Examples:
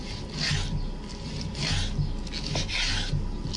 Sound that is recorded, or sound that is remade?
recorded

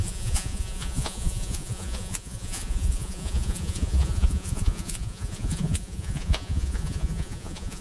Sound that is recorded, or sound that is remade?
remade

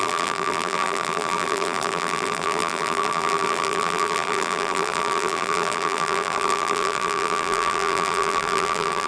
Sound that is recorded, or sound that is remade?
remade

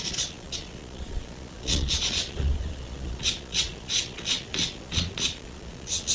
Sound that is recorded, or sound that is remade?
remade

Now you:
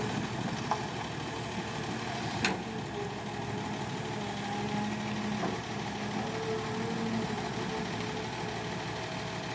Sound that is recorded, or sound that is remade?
recorded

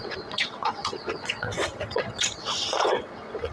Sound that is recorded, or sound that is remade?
remade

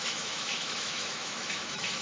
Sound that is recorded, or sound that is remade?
remade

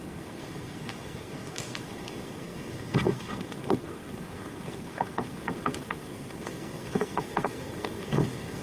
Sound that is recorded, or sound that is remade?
remade